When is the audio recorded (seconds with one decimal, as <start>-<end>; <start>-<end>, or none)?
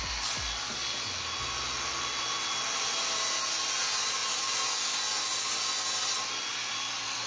0.0-7.3